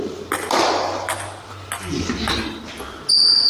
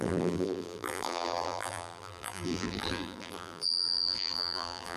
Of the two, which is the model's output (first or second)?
second